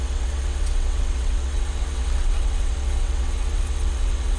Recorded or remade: remade